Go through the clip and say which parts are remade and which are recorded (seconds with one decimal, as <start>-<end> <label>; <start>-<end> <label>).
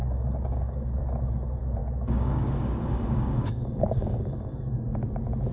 0.0-1.0 remade; 1.0-1.8 recorded; 1.8-5.1 remade; 5.1-5.5 recorded